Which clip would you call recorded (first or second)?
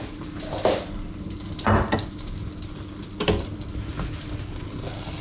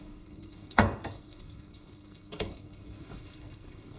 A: first